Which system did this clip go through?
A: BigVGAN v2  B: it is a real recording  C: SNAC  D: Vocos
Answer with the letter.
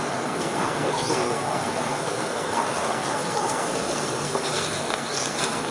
C